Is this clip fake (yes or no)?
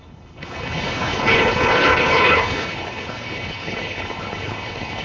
yes